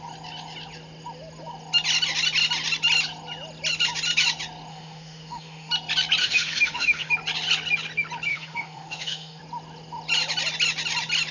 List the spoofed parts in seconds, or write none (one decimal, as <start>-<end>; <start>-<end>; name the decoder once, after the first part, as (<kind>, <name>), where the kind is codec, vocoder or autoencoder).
4.7-5.7 (autoencoder, DAC-VAE); 6.2-7.1; 8.3-9.4